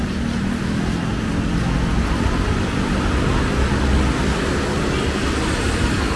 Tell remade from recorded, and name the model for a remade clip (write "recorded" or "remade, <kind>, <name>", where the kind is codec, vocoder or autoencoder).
recorded